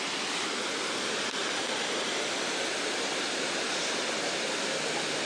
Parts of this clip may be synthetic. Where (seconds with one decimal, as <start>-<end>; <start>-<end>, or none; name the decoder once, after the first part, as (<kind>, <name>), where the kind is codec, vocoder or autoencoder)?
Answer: 1.4-4.6 (vocoder, BigVGAN v2)